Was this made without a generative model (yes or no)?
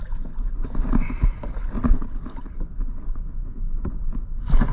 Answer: yes